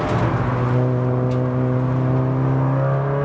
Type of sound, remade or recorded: recorded